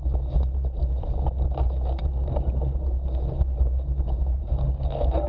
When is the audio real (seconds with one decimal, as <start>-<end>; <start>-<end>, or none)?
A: 0.0-5.3